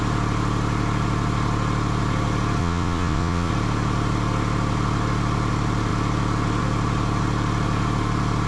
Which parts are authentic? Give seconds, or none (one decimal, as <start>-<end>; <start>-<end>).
0.0-2.6; 3.5-8.5